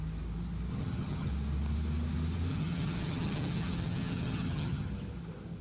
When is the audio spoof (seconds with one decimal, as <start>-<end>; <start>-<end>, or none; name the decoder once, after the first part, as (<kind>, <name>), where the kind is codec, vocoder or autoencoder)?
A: 0.7-1.3 (vocoder, HiFi-GAN); 2.5-4.9